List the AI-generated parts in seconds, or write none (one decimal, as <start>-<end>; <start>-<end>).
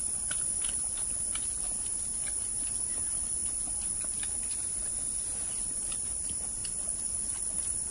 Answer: none